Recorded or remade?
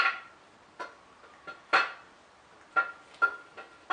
recorded